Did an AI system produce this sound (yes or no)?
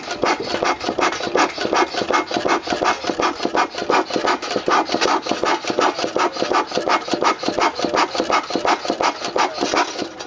no